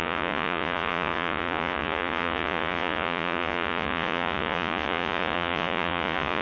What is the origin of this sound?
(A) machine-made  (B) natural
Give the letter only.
A